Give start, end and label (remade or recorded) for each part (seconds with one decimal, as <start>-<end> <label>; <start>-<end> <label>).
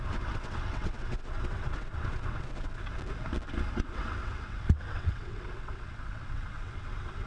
0.0-2.9 remade; 2.9-3.7 recorded; 3.7-7.3 remade